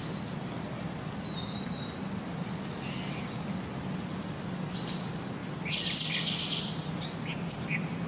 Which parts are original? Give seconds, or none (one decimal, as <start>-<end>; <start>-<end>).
0.0-8.1